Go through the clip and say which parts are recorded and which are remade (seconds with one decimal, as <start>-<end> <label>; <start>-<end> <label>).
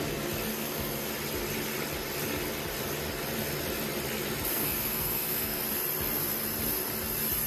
0.0-0.5 recorded; 0.5-1.1 remade; 1.1-4.5 recorded; 4.5-5.6 remade; 5.6-7.5 recorded